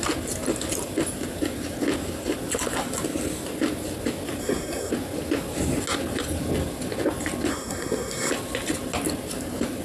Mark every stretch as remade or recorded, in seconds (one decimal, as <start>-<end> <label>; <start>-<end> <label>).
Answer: 0.0-4.4 recorded; 4.4-4.9 remade; 4.9-7.5 recorded; 7.5-8.3 remade; 8.3-9.8 recorded